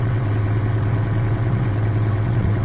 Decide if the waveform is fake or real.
fake